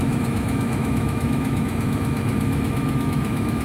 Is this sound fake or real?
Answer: fake